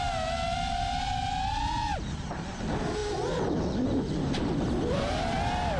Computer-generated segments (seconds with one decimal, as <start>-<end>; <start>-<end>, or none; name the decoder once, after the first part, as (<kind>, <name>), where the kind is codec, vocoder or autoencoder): none